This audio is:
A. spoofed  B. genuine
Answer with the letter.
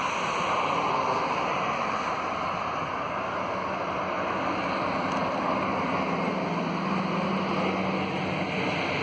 B